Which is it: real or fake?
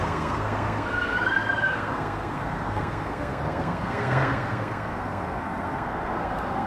fake